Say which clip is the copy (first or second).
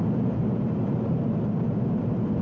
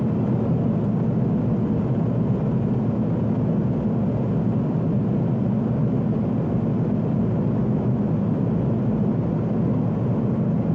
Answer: first